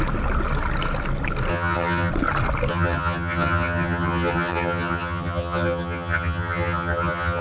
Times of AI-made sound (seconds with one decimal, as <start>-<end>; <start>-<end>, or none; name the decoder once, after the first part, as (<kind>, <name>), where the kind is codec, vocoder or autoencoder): 1.5-2.1 (vocoder, HiFi-GAN); 2.7-7.4